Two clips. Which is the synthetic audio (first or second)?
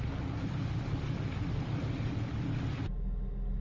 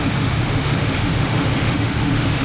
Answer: second